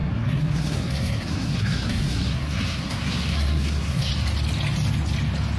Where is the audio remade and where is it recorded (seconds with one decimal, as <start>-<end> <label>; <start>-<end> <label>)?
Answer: 0.0-4.1 remade; 4.1-5.6 recorded